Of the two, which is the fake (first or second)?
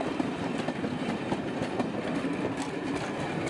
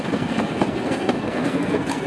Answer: second